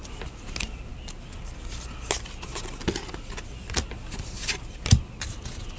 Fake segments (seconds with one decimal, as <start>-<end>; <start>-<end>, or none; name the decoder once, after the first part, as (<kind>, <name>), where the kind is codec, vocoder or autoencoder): none